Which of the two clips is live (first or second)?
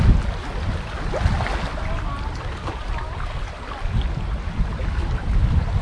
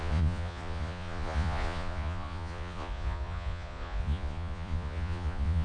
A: first